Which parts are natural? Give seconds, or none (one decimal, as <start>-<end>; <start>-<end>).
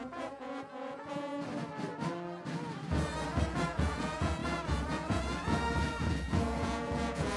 1.3-3.5